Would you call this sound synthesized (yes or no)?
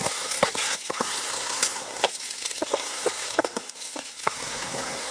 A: yes